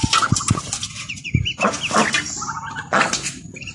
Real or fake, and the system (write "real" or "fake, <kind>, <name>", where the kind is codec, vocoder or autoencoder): real